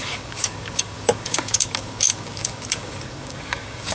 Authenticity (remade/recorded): remade